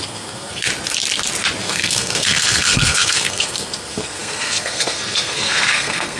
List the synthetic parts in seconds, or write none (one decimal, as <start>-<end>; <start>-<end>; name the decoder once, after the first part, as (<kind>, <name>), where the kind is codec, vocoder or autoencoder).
0.0-0.7 (codec, SNAC); 1.6-6.2